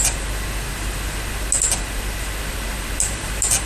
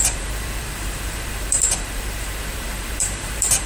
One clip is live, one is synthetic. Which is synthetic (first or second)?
second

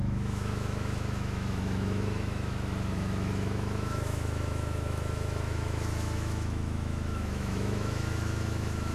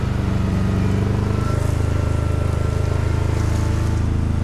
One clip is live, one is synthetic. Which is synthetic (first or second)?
first